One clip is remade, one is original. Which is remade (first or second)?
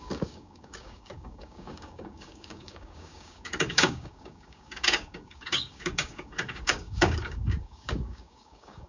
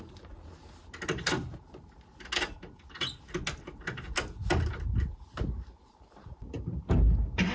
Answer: first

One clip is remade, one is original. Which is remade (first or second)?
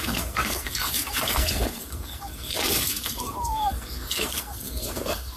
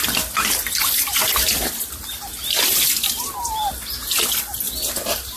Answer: first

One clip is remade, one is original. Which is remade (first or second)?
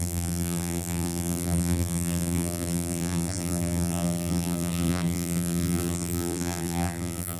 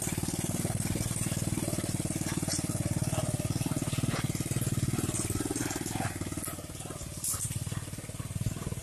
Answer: first